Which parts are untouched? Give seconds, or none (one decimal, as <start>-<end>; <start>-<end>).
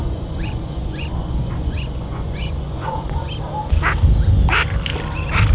3.3-5.5